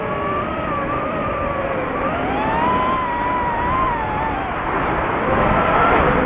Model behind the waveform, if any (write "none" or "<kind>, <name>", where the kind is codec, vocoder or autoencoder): none